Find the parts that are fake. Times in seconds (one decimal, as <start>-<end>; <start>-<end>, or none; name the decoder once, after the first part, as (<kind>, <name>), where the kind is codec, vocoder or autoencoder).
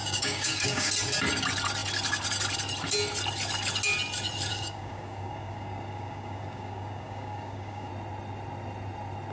0.0-0.9 (codec, DAC); 4.5-7.9